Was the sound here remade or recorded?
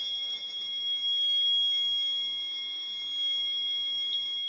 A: recorded